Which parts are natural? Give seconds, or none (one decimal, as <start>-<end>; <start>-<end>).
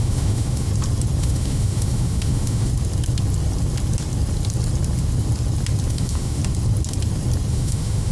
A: 0.7-1.2; 2.7-5.9; 6.4-7.5